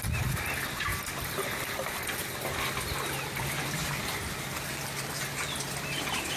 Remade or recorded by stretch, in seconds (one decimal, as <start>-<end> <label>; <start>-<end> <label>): 0.0-0.9 recorded; 0.9-4.7 remade; 4.7-6.4 recorded